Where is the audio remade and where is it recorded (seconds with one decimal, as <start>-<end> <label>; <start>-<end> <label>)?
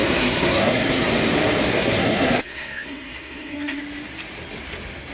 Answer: 0.0-1.1 remade; 1.1-1.7 recorded; 1.7-3.8 remade; 3.8-5.1 recorded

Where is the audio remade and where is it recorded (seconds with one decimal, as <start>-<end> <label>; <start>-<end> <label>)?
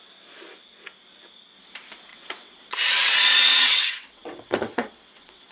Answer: 0.0-2.1 recorded; 2.1-5.5 remade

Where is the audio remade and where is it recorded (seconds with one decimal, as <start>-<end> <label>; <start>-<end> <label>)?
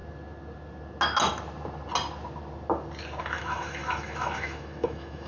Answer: 0.0-3.2 recorded; 3.2-5.3 remade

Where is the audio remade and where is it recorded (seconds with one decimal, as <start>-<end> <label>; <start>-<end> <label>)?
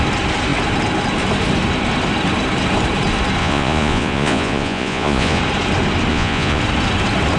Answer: 0.0-3.4 recorded; 3.4-5.4 remade; 5.4-6.1 recorded; 6.1-6.6 remade; 6.6-7.4 recorded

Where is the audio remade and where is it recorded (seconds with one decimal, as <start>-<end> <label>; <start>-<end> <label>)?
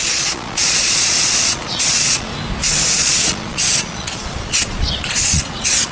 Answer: 0.0-2.3 remade; 2.3-3.0 recorded; 3.0-5.9 remade